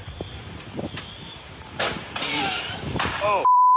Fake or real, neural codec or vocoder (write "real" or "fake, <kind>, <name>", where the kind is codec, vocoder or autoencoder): fake, vocoder, BigVGAN v2